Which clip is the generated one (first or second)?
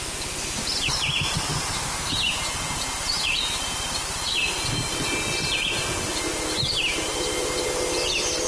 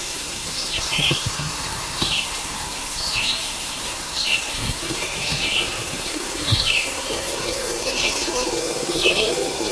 second